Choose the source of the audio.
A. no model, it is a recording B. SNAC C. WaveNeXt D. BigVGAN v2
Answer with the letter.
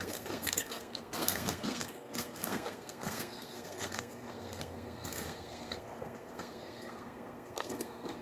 B